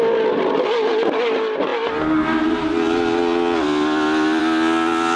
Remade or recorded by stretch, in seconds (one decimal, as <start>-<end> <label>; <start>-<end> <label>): 0.0-5.2 recorded